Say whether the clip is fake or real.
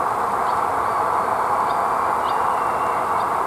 real